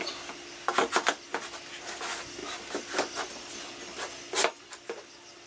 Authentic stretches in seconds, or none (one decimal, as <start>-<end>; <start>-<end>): 0.0-5.5